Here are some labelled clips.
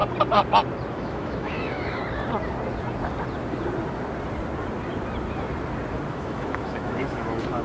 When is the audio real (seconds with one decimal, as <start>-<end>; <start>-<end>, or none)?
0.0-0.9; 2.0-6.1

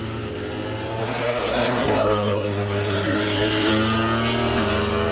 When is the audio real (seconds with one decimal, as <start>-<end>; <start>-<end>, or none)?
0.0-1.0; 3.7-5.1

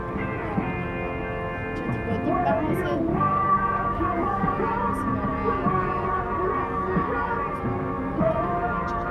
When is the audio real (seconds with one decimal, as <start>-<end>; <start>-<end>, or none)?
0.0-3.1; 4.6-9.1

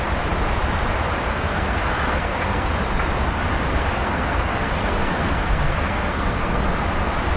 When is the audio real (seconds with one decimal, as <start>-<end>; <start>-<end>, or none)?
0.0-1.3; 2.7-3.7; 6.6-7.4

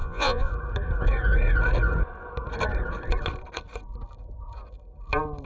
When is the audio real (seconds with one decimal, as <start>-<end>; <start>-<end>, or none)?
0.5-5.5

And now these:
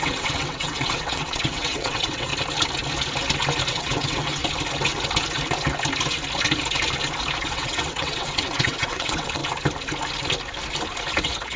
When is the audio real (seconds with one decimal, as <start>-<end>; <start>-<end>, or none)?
2.3-3.7; 4.4-7.5; 9.4-11.1

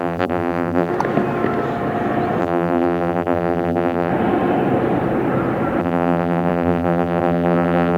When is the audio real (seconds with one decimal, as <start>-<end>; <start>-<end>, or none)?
0.9-2.4; 4.1-5.8